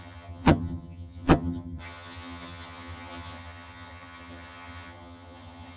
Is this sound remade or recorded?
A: remade